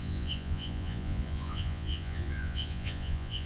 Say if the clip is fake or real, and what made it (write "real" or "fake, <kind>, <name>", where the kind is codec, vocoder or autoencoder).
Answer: fake, vocoder, Vocos